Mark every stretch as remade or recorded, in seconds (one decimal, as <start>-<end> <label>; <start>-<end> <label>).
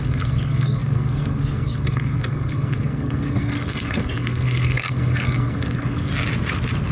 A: 0.0-6.1 remade; 6.1-6.9 recorded